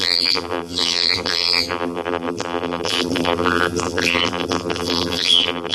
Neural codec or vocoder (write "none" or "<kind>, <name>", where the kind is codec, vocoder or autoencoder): vocoder, BigVGAN v2